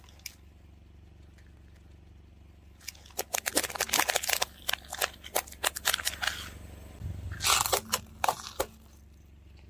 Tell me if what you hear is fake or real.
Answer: real